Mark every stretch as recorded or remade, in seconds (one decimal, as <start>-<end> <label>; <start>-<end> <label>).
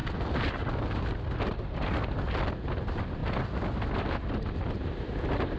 0.0-2.1 recorded; 2.1-3.2 remade; 3.2-4.5 recorded; 4.5-5.6 remade